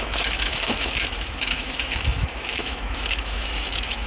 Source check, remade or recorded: remade